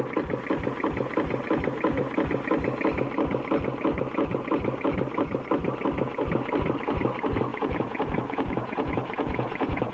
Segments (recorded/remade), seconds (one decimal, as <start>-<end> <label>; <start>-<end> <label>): 0.0-7.5 recorded; 7.5-9.9 remade